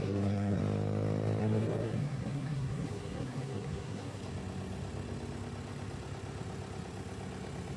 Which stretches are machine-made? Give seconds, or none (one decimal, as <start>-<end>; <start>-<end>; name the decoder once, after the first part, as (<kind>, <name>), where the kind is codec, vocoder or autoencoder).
0.0-0.6 (codec, SNAC); 1.4-4.2